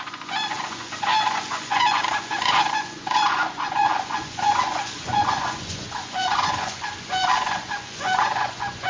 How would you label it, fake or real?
fake